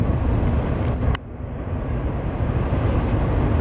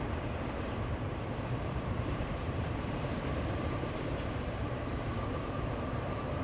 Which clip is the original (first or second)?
first